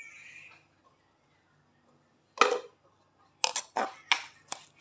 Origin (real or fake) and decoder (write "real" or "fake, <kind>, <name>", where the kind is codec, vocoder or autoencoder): real